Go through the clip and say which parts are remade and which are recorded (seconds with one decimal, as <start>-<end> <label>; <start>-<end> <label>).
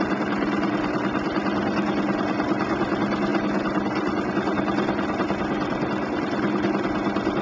0.0-7.4 recorded